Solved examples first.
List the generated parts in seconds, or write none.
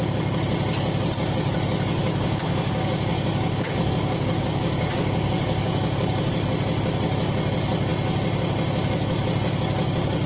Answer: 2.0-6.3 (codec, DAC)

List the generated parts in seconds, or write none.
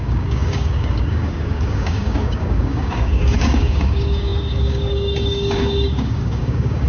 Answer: 0.0-6.9 (codec, DAC)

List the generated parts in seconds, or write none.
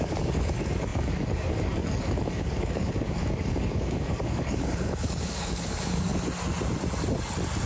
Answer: 0.0-6.1 (codec, DAC)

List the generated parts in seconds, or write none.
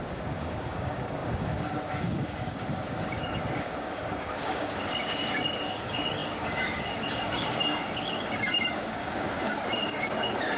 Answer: 0.0-10.6 (codec, DAC)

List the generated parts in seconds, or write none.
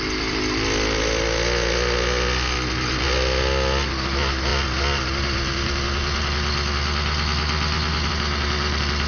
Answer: none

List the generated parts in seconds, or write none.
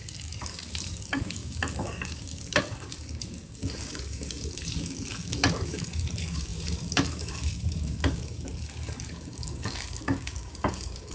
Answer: 0.0-11.1 (codec, DAC)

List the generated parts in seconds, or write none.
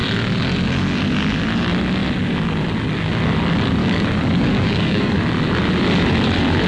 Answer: 3.8-5.2 (codec, DAC)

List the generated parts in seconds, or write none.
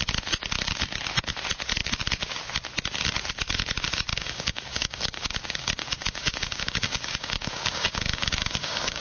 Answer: 4.1-9.0 (codec, DAC)